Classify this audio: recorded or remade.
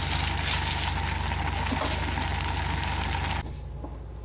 recorded